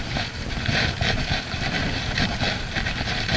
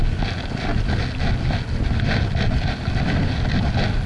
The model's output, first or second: first